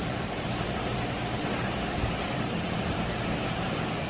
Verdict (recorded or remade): remade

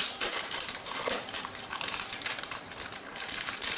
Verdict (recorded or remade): remade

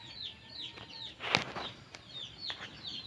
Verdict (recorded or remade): recorded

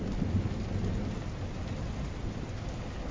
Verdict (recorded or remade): recorded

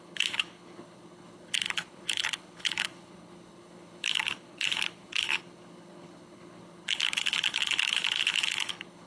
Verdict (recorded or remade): remade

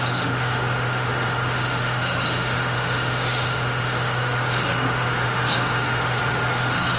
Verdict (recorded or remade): remade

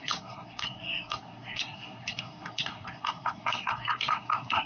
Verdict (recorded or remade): remade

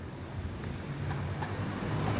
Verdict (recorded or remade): recorded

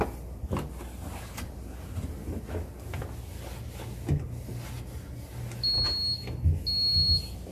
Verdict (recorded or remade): recorded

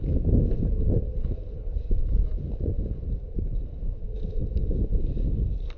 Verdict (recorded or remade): recorded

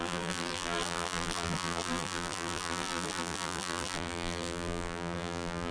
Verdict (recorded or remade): remade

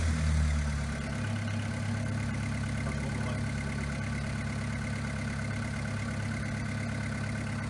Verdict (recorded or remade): recorded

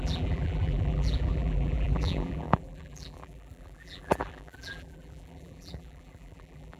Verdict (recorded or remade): remade